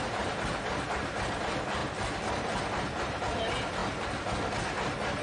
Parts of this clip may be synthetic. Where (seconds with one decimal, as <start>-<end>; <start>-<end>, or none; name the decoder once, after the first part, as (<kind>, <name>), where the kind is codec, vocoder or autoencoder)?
none